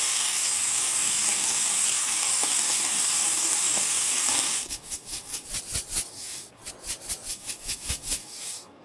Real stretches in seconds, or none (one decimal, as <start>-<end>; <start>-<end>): 5.5-6.1; 6.6-7.3